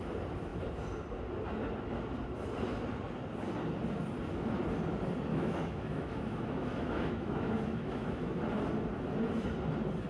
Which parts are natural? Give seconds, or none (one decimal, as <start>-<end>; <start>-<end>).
0.0-5.3; 8.4-10.1